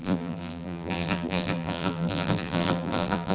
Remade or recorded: remade